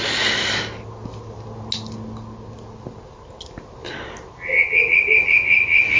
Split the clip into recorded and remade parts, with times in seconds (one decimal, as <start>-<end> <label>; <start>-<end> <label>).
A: 0.0-6.0 recorded